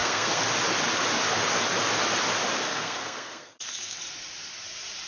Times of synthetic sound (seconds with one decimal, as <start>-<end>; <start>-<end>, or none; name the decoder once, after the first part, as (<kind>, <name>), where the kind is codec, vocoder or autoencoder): 0.0-0.5 (codec, SNAC); 2.5-4.0